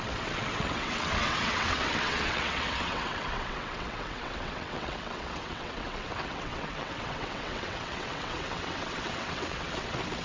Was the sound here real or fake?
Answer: fake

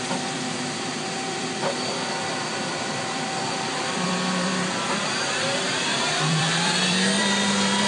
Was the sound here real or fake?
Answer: fake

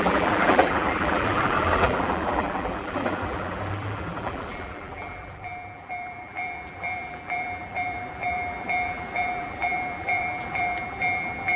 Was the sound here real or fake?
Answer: fake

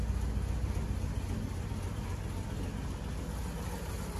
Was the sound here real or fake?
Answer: real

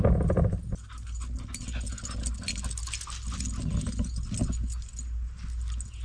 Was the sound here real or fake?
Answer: real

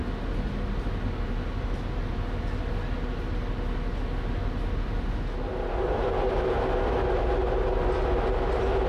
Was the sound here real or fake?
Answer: real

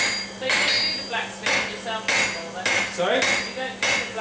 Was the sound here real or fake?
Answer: real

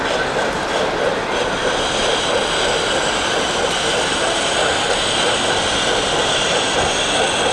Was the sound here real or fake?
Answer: real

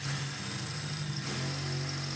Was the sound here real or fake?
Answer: real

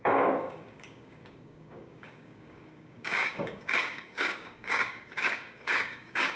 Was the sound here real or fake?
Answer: fake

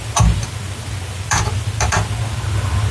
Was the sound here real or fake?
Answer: fake